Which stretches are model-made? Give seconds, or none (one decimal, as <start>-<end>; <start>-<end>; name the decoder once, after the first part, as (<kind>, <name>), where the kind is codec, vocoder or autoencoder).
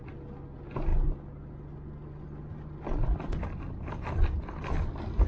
none